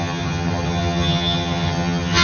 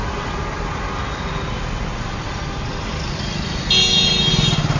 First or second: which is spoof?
first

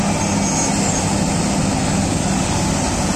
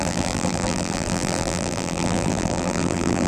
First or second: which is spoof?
second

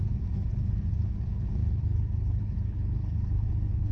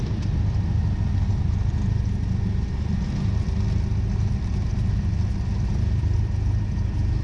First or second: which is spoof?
first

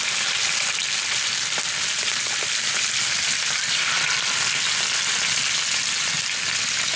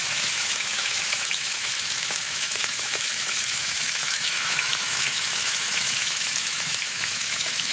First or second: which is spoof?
second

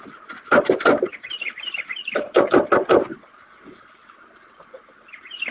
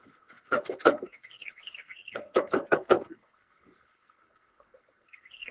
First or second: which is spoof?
second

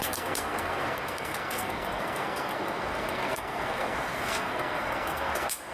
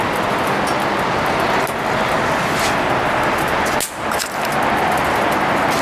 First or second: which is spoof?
first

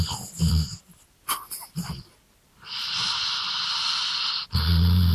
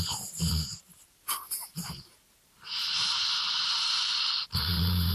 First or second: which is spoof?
second